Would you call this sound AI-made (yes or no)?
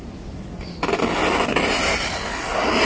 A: no